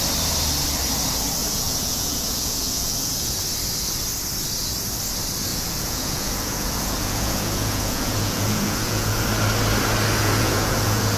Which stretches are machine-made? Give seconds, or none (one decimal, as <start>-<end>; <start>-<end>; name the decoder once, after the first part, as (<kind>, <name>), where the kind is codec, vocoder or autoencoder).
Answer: 1.4-3.3 (vocoder, Vocos); 5.5-9.2; 10.2-11.2

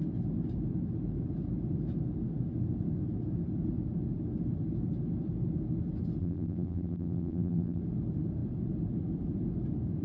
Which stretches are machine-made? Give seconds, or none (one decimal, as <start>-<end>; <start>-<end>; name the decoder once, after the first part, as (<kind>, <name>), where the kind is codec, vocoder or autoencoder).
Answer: 6.2-7.8 (vocoder, BigVGAN v2)